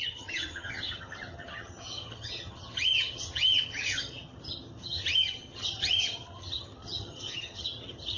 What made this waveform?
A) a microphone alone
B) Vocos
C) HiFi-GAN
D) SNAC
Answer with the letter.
C